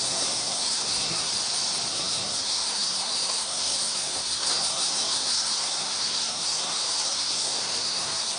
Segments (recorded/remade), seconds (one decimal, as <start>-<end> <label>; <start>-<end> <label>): 0.0-1.3 remade; 1.3-1.9 recorded; 1.9-8.4 remade